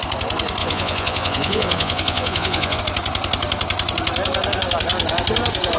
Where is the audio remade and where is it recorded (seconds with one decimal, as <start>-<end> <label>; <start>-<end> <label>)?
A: 0.0-0.6 recorded; 0.6-2.8 remade; 2.8-5.8 recorded

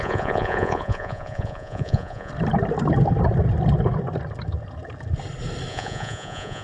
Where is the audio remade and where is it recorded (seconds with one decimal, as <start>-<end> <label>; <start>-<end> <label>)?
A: 0.0-2.3 remade; 2.3-5.7 recorded; 5.7-6.6 remade

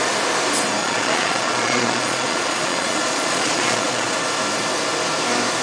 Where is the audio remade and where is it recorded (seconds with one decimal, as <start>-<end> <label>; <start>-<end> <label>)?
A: 0.0-0.8 recorded; 0.8-4.2 remade; 4.2-5.6 recorded

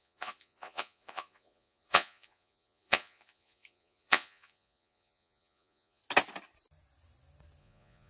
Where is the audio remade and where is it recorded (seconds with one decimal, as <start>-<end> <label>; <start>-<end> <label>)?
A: 0.0-6.0 remade; 6.0-7.6 recorded; 7.6-8.1 remade

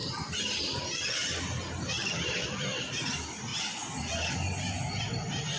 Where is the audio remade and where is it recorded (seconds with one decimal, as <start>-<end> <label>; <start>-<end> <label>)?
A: 0.0-5.6 recorded

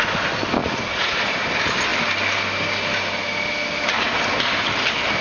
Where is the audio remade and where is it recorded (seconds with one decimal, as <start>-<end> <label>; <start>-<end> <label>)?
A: 0.0-0.6 recorded; 0.6-1.2 remade; 1.2-5.2 recorded

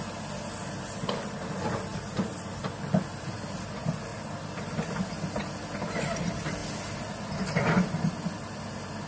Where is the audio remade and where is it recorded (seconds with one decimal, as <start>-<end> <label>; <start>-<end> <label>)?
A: 0.0-9.1 recorded

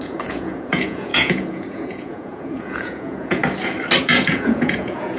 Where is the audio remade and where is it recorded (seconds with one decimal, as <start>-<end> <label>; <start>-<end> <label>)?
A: 0.0-3.4 remade; 3.4-4.0 recorded; 4.0-5.2 remade